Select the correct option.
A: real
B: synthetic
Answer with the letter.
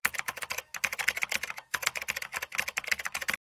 A